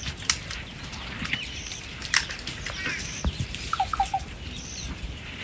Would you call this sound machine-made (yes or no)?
no